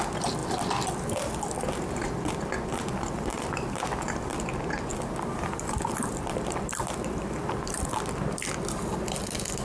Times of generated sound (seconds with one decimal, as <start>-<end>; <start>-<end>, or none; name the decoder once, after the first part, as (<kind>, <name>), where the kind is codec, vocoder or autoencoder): 0.4-2.5 (vocoder, BigVGAN v2); 2.9-3.8; 4.9-8.5